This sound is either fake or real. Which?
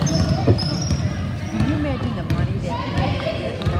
real